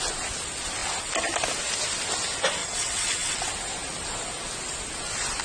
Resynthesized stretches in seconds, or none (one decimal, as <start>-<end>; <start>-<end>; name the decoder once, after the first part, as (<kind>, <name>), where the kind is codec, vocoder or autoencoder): 2.6-3.4 (vocoder, WaveNeXt)